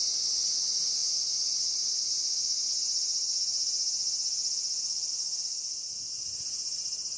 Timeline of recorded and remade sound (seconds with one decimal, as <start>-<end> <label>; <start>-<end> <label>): 0.0-7.2 recorded